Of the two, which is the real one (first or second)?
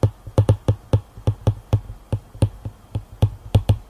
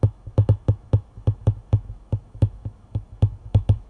first